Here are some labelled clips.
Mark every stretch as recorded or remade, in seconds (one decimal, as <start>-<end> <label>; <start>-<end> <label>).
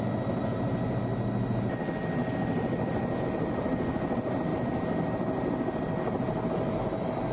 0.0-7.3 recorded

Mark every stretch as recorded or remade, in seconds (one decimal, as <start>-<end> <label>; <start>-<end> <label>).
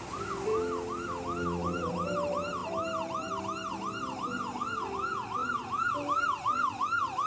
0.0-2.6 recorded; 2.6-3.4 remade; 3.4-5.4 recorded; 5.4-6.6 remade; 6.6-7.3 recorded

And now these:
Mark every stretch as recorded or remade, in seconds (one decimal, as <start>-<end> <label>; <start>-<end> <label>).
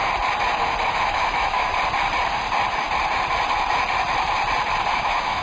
0.0-0.9 recorded; 0.9-1.7 remade; 1.7-4.9 recorded; 4.9-5.4 remade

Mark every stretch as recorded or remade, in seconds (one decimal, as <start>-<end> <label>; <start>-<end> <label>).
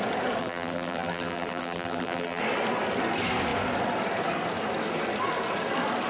0.0-0.4 recorded; 0.4-2.4 remade; 2.4-6.1 recorded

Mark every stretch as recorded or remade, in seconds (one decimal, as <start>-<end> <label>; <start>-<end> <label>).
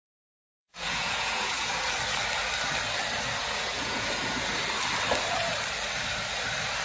0.0-1.7 remade; 1.7-3.4 recorded; 3.4-4.1 remade; 4.1-6.8 recorded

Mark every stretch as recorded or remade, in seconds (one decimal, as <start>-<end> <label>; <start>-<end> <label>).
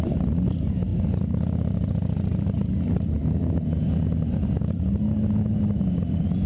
0.0-6.5 recorded